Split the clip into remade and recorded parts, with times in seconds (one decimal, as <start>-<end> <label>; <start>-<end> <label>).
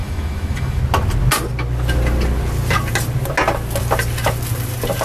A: 0.0-0.8 remade; 0.8-5.0 recorded